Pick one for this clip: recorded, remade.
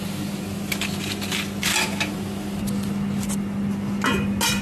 recorded